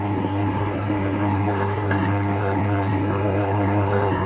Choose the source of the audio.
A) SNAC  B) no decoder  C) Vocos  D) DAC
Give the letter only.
A